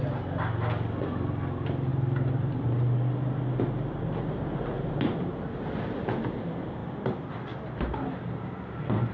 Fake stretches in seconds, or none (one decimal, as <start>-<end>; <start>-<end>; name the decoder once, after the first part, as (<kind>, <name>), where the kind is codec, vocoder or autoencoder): 1.9-5.5 (vocoder, BigVGAN v2); 6.8-9.1